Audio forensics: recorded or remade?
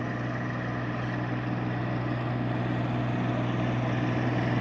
recorded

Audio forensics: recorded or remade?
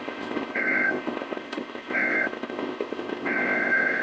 remade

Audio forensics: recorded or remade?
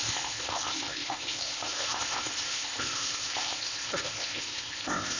remade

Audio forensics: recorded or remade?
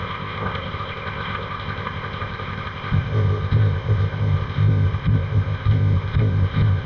remade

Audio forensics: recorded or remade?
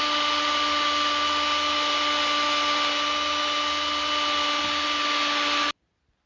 recorded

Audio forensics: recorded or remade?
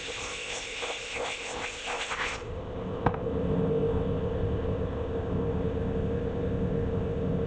remade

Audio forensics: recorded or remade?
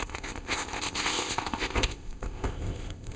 remade